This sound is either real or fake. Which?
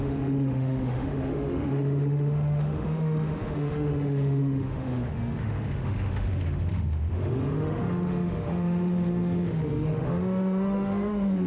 fake